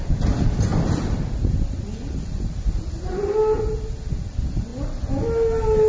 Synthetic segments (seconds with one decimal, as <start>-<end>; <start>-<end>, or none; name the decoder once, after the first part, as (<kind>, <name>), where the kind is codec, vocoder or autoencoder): none